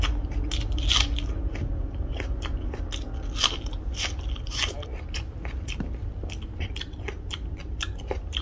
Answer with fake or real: real